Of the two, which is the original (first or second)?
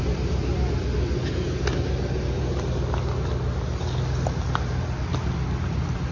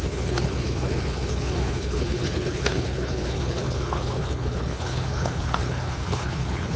first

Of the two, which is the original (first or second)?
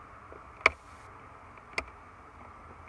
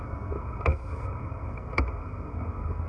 first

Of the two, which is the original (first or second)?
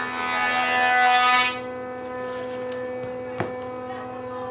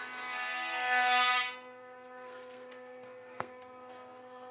first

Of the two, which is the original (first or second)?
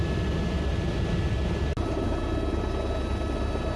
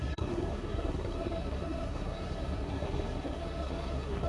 first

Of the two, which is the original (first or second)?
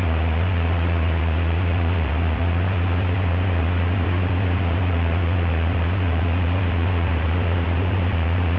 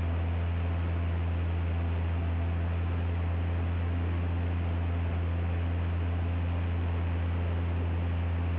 second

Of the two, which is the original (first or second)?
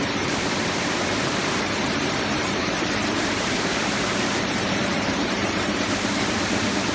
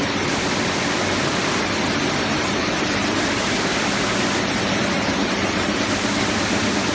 second